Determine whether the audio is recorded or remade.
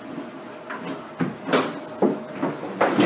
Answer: recorded